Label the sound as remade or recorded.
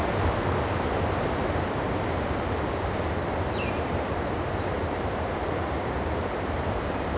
remade